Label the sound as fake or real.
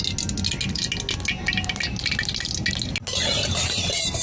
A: real